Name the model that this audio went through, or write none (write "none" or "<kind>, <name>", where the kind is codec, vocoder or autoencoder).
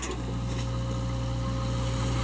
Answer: none